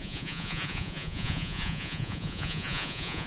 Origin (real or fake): fake